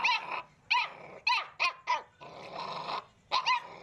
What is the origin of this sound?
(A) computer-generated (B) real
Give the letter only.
B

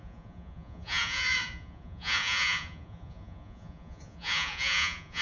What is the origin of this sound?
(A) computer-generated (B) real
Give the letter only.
A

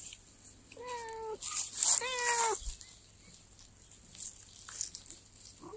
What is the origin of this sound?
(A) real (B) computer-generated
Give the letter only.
A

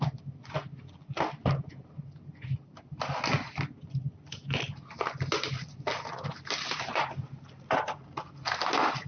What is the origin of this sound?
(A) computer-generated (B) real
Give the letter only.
B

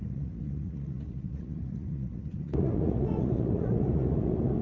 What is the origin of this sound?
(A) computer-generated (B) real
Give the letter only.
A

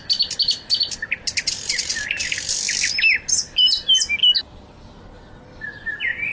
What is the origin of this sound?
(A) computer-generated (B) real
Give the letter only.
B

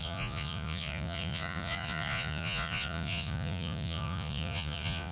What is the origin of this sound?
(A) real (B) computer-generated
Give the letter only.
B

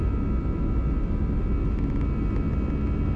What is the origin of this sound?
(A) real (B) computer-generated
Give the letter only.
A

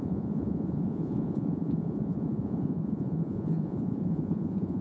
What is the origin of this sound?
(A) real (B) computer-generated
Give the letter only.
B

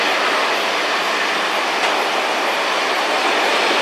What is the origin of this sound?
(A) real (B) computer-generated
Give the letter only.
A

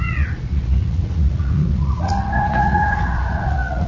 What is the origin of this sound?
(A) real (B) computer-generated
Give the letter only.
B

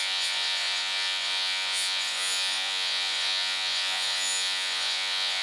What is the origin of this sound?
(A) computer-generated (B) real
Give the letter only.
A